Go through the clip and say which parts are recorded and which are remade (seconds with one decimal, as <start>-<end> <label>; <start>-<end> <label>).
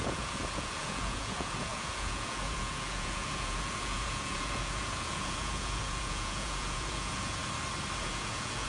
0.0-7.4 remade; 7.4-8.0 recorded; 8.0-8.7 remade